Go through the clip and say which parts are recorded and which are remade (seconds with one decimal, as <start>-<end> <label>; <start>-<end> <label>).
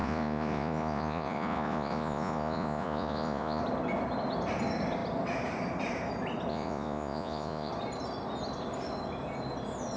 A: 0.0-3.6 remade; 3.6-6.5 recorded; 6.5-7.7 remade; 7.7-10.0 recorded